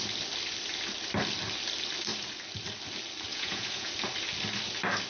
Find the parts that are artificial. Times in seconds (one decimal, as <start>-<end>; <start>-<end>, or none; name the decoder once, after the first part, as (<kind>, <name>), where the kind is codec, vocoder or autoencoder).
3.3-3.9 (vocoder, Vocos)